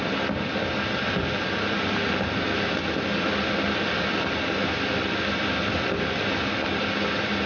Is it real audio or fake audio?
real